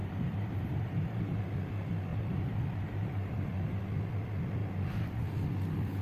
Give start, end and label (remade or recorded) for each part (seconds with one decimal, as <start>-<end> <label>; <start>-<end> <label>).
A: 0.0-1.4 remade; 1.4-2.1 recorded; 2.1-3.8 remade; 3.8-6.0 recorded